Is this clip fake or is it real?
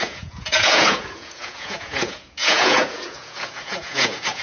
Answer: fake